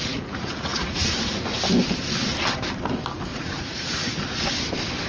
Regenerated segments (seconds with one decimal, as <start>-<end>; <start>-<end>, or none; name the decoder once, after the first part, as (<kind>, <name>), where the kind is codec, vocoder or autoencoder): 0.0-1.6 (vocoder, Vocos); 3.3-4.5